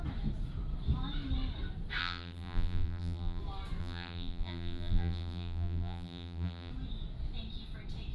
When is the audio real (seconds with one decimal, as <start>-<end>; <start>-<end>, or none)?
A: 0.0-2.0; 3.4-3.8; 6.7-8.1